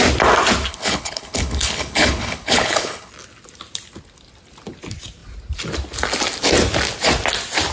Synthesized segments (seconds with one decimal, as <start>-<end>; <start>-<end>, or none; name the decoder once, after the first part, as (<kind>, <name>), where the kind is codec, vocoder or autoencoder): 0.7-3.1 (codec, HILCodec)